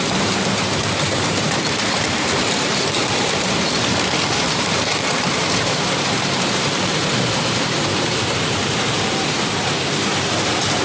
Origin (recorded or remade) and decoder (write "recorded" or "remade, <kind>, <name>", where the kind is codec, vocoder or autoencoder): remade, vocoder, BigVGAN v2